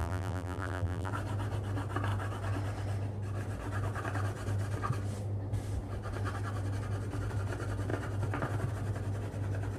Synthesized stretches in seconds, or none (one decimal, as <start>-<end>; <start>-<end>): 0.0-1.1